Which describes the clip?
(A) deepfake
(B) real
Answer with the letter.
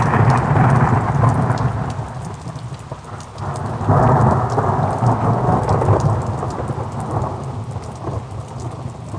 B